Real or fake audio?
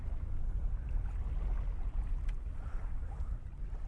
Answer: real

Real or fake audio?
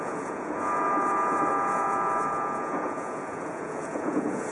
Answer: fake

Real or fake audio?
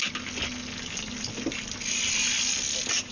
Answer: real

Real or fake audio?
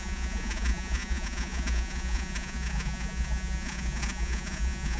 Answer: fake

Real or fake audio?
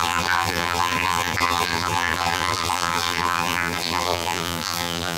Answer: fake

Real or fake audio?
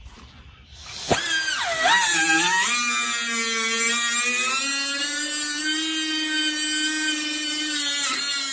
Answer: real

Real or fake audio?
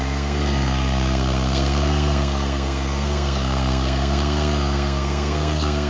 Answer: fake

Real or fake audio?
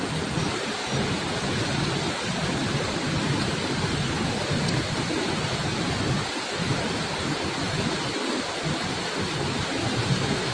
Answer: real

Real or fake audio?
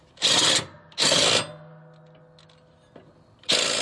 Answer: real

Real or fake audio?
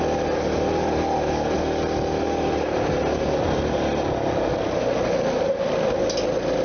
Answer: real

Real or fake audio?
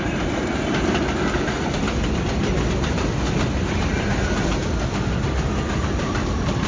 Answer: real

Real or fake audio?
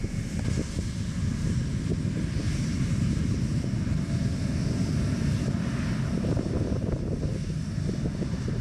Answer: real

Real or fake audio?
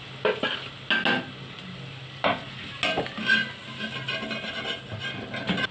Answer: real